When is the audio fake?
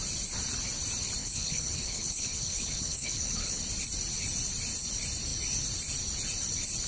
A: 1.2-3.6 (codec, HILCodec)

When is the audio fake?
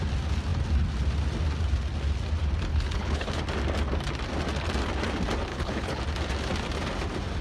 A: 2.7-3.3 (codec, HILCodec); 5.5-6.0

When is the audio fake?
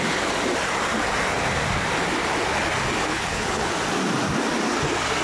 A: 3.1-3.7 (codec, HILCodec)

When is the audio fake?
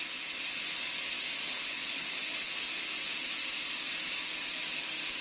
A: 1.4-2.2 (codec, HILCodec)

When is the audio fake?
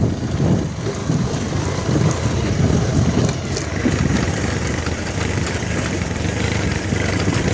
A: none